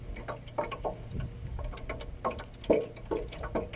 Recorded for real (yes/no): yes